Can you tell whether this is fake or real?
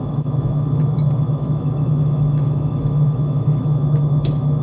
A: fake